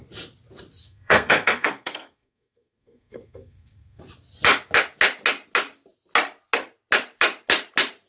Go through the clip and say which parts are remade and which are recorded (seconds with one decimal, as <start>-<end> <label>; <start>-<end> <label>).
0.0-0.8 recorded; 0.8-4.0 remade; 4.0-8.1 recorded